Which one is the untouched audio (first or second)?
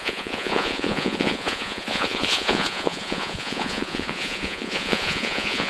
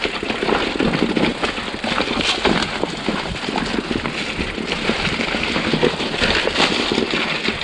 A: second